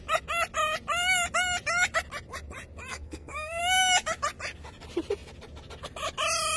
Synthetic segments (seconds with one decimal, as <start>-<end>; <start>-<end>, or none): 2.9-3.6